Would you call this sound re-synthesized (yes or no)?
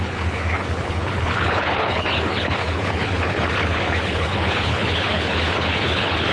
yes